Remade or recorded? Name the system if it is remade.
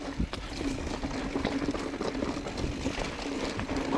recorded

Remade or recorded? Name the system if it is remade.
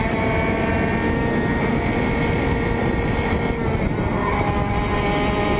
recorded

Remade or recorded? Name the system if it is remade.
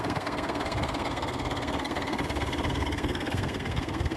remade, codec, SNAC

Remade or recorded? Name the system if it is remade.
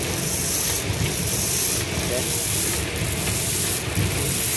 recorded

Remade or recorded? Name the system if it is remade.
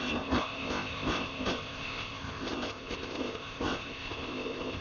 remade, codec, ZipCodec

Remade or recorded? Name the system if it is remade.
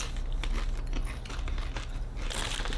recorded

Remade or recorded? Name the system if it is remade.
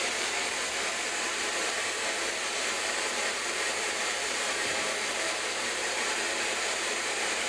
remade, vocoder, BigVGAN v2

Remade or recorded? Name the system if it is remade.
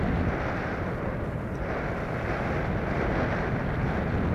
recorded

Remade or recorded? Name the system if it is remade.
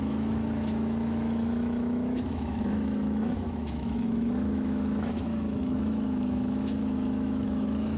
remade, autoencoder, DAC-VAE